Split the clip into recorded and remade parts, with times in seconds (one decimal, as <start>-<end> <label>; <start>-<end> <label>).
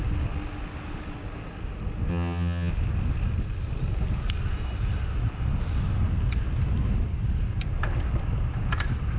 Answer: 0.0-2.1 recorded; 2.1-2.7 remade; 2.7-9.2 recorded